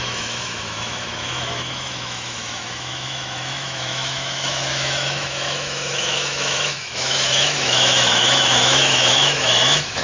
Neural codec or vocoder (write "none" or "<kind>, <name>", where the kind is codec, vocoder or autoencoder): autoencoder, DAC-VAE